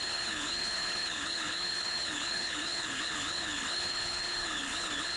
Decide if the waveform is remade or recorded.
remade